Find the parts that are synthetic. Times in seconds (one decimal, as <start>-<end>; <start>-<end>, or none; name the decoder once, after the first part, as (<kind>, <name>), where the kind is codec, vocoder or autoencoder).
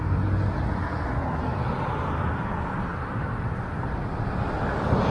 1.5-2.3 (vocoder, BigVGAN v2); 2.9-4.0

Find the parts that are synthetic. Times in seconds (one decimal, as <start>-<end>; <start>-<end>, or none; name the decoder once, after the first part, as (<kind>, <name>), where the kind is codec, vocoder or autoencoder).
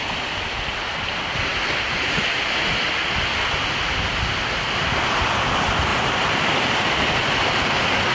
5.9-7.5 (vocoder, BigVGAN v2)